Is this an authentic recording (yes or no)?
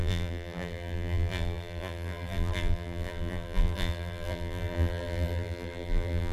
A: no